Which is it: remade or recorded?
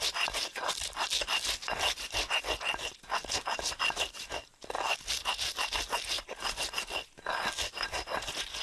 recorded